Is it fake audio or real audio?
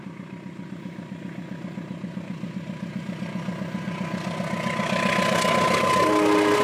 real